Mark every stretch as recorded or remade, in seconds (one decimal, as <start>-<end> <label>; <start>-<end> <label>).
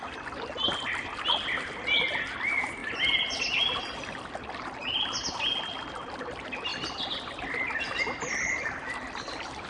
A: 0.0-9.7 recorded